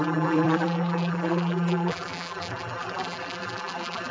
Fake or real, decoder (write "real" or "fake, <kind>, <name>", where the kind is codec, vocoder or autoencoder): fake, vocoder, BigVGAN v2